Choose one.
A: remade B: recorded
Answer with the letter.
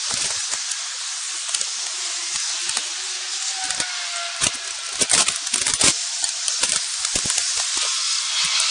B